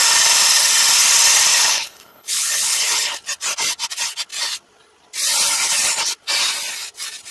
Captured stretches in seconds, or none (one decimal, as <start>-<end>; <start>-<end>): 0.0-1.5; 3.1-7.3